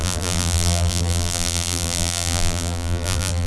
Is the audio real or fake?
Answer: fake